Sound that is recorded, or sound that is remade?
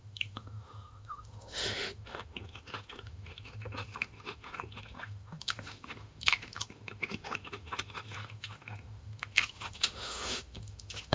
remade